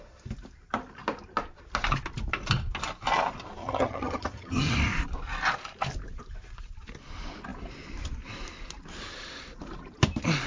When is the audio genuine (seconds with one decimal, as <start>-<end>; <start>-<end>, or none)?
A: 0.0-3.6; 4.7-10.5